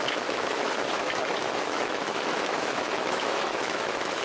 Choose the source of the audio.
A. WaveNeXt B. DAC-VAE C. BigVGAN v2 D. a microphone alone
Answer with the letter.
B